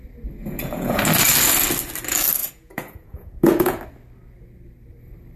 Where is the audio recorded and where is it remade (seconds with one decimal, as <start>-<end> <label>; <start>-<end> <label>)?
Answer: 0.0-0.4 recorded; 0.4-1.0 remade; 1.0-2.4 recorded; 2.4-3.8 remade; 3.8-5.4 recorded